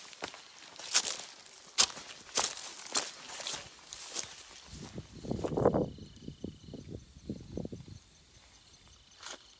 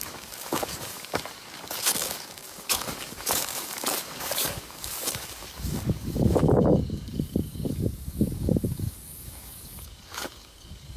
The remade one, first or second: second